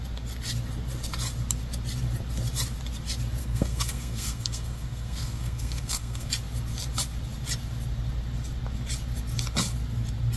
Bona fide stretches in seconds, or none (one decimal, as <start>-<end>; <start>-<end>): 0.0-3.4; 6.3-10.4